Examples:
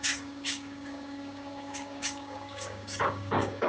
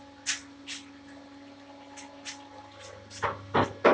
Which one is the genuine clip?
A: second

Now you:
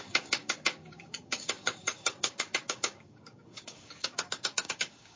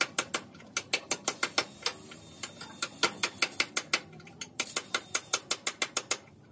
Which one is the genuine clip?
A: second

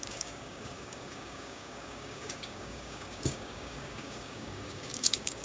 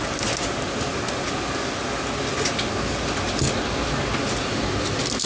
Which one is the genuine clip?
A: second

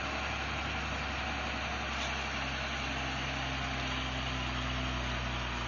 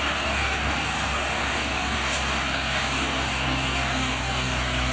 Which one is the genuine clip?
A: first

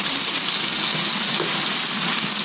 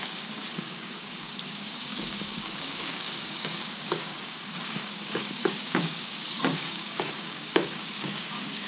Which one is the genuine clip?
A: first